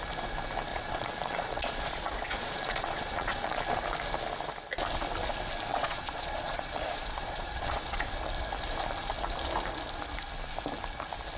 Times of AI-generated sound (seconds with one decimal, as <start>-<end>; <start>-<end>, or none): 0.7-3.6; 5.7-8.1